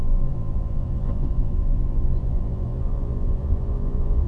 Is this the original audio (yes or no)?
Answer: no